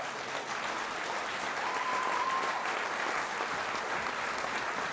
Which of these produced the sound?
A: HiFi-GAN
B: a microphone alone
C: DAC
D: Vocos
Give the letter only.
B